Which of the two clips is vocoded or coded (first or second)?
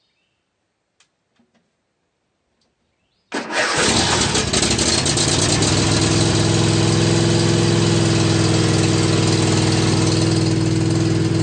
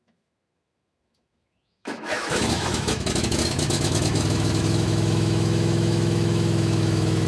second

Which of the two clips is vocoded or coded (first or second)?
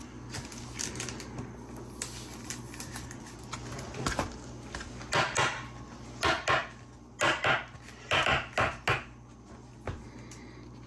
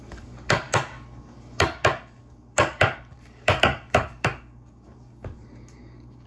second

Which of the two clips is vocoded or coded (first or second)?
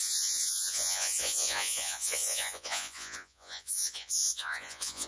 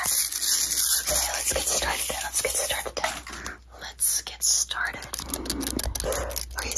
first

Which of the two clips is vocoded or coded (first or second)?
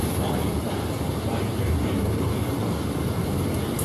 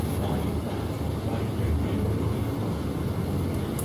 first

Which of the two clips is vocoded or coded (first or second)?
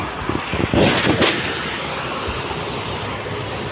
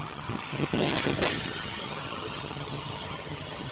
second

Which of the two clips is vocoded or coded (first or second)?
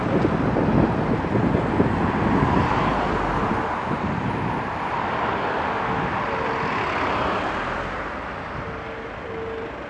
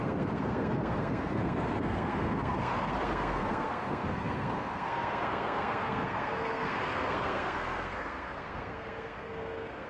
second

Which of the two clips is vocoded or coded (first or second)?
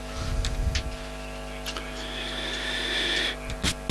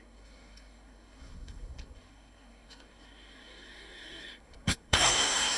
second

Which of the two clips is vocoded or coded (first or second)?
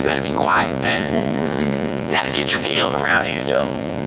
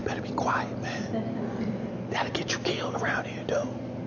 first